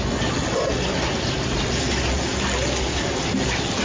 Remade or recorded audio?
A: recorded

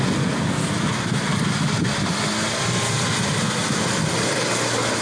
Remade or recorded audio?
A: recorded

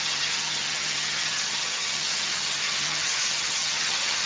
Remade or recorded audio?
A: remade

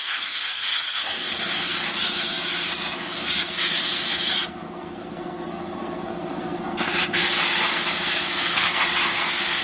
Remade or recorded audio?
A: remade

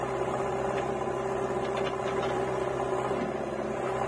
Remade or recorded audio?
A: recorded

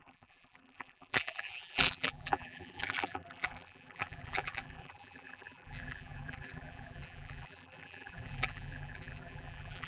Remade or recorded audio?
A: remade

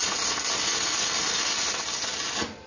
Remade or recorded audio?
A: recorded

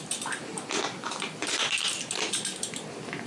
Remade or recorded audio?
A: recorded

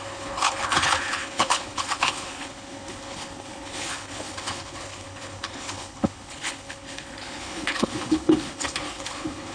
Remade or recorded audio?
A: remade